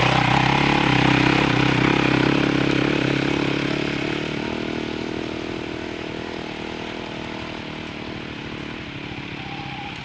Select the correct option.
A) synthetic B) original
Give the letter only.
B